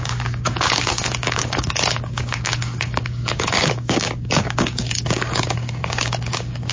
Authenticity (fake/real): fake